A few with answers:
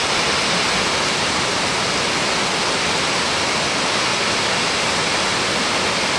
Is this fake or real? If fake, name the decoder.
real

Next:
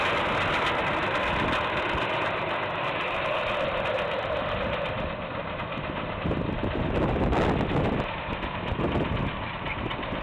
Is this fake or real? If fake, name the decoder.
real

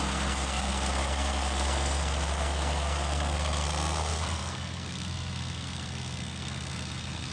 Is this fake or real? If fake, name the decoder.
fake, codec, SNAC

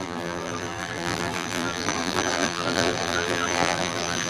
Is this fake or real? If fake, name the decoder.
fake, vocoder, BigVGAN v2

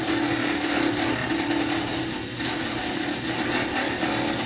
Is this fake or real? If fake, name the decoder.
real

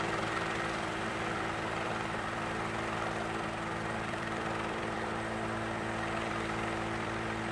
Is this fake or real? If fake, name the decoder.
fake, vocoder, BigVGAN v2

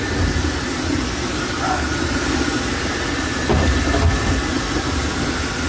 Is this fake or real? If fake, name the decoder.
real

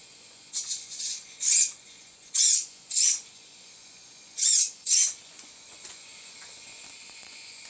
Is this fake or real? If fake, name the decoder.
fake, vocoder, Vocos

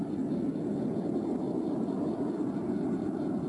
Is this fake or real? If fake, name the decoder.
real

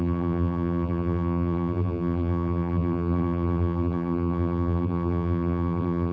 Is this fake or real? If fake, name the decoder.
fake, vocoder, BigVGAN v2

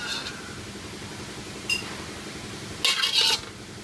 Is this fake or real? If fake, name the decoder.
real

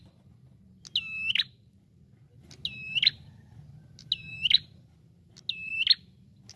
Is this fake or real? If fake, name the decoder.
real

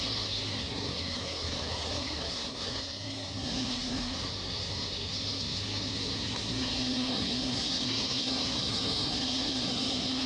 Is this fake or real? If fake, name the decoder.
fake, codec, SNAC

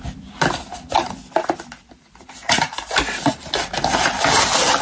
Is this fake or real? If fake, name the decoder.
real